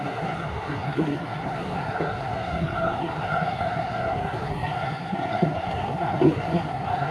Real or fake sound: fake